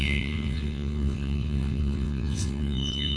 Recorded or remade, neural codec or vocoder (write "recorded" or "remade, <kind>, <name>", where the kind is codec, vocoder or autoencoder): remade, vocoder, WaveNeXt